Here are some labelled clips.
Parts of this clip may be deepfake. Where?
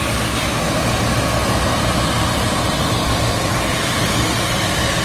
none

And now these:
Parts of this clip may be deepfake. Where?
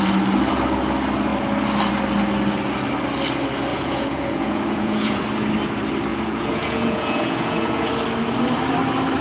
3.7-5.2 (vocoder, Vocos); 6.1-7.9